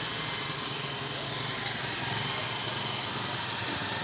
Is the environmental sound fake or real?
real